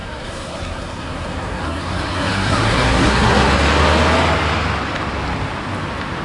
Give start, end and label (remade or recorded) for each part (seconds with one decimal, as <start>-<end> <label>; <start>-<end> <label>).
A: 0.0-3.5 remade; 3.5-6.2 recorded